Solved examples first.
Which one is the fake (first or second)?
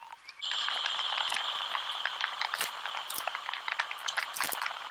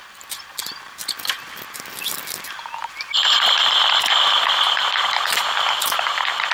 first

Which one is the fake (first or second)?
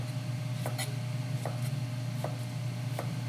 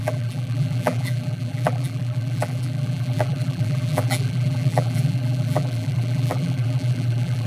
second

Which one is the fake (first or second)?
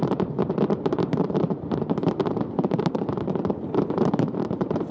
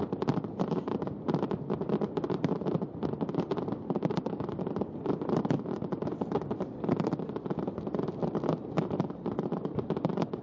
first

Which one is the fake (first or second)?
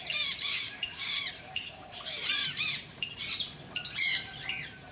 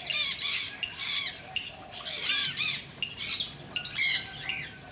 first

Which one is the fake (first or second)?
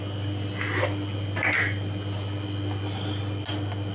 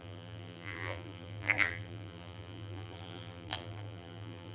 second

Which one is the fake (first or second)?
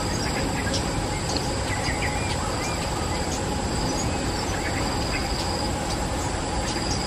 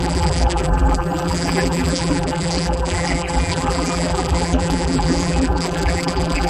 second